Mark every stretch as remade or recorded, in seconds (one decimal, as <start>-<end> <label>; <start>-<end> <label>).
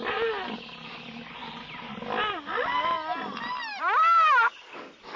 0.0-5.2 recorded